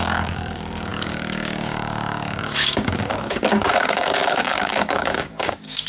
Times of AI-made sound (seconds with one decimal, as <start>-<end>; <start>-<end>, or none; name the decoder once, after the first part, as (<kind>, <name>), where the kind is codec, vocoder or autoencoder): 0.0-5.9 (codec, DAC)